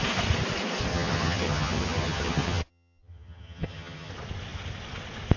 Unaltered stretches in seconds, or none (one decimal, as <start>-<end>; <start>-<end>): 0.0-0.9; 4.1-5.4